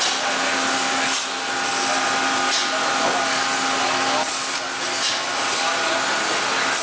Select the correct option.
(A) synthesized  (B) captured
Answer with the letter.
B